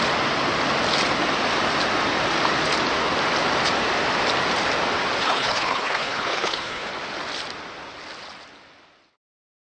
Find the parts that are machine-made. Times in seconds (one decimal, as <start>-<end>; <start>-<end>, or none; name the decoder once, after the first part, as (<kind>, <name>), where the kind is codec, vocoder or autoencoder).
5.2-6.9 (codec, HILCodec)

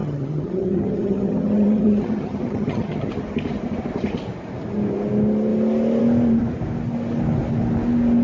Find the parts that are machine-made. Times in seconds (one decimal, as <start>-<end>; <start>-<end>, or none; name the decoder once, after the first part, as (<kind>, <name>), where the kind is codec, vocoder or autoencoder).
0.0-3.1 (vocoder, HiFi-GAN)